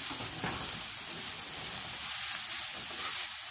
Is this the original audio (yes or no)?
yes